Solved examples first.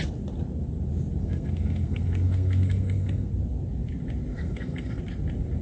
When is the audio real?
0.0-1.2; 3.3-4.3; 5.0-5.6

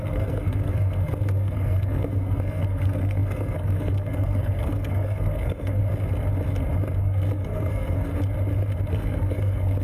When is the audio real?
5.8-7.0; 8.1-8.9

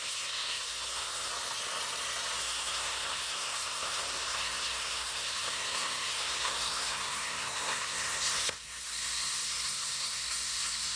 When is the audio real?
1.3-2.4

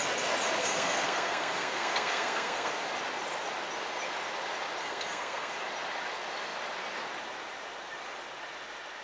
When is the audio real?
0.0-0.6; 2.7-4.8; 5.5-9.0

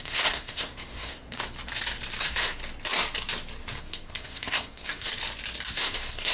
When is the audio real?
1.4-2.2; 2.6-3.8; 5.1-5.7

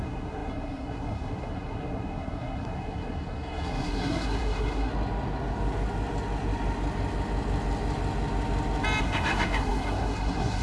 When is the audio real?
4.9-9.0